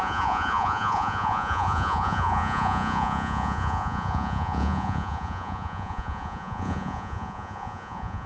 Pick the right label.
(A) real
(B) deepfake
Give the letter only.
B